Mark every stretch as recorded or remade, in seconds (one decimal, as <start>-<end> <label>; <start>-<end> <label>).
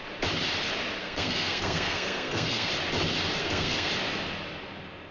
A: 0.0-1.0 recorded; 1.0-2.7 remade; 2.7-3.4 recorded; 3.4-3.9 remade; 3.9-5.1 recorded